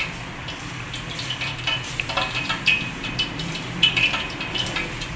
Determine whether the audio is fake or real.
fake